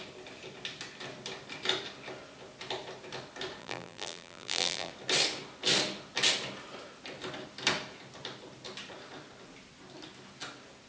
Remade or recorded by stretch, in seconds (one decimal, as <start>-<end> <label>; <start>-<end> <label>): 0.0-3.6 recorded; 3.6-4.9 remade; 4.9-10.9 recorded